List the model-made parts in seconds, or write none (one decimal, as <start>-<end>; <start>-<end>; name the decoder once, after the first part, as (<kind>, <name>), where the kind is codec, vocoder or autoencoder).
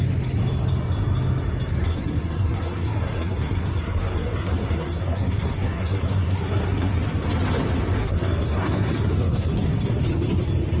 1.8-6.9 (codec, SNAC); 8.0-10.0